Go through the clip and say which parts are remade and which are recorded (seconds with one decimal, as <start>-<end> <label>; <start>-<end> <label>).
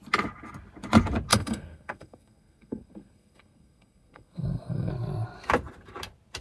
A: 0.0-1.3 recorded; 1.3-4.9 remade; 4.9-6.4 recorded